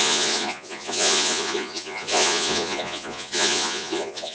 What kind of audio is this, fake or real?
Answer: fake